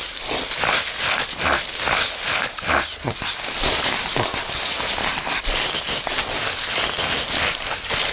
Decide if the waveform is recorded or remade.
recorded